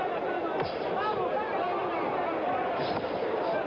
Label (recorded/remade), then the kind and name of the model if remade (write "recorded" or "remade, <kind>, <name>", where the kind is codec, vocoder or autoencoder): recorded